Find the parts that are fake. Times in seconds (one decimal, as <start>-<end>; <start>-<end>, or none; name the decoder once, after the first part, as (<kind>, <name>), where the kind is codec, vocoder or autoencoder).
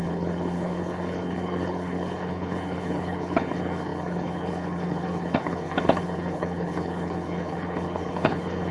0.0-8.7 (codec, HILCodec)